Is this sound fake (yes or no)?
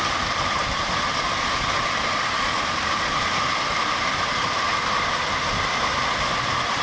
no